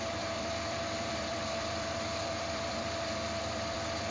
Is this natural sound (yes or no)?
no